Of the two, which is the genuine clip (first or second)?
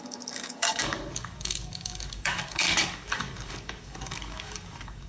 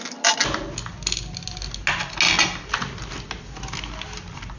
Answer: second